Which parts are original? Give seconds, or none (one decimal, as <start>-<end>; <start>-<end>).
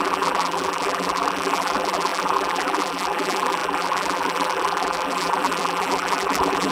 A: none